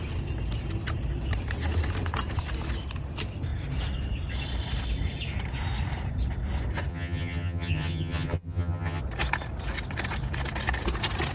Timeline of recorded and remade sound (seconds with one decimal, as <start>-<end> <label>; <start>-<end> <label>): 0.0-6.9 recorded; 6.9-9.0 remade; 9.0-11.3 recorded